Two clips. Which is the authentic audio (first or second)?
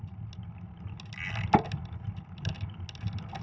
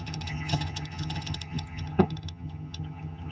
first